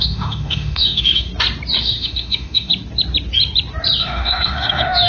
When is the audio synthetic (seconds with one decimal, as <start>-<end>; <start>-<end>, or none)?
0.0-1.3; 1.8-2.7; 4.0-5.1